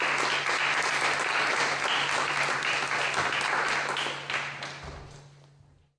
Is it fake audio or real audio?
real